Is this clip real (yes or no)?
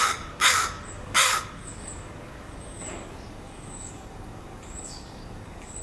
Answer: no